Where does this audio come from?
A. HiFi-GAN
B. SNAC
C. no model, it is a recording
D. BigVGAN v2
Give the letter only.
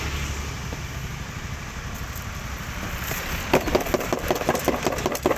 C